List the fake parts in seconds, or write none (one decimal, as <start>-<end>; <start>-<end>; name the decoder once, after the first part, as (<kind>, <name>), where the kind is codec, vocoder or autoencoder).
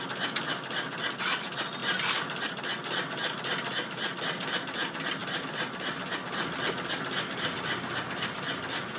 none